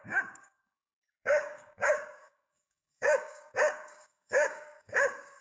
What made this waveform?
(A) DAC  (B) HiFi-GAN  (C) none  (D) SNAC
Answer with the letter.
A